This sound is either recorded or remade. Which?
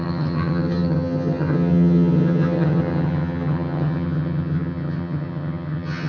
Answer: remade